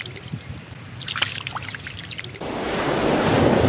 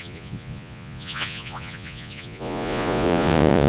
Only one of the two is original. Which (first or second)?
first